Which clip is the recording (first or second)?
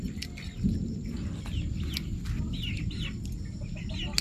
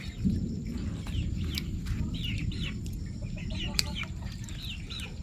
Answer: first